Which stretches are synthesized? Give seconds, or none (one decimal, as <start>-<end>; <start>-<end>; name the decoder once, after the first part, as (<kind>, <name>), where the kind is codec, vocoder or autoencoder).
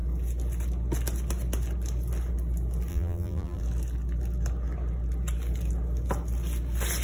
2.9-3.6 (vocoder, BigVGAN v2)